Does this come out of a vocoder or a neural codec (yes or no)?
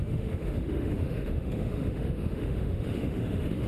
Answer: yes